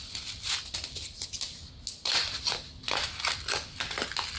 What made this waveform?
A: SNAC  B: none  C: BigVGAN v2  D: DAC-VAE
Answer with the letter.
B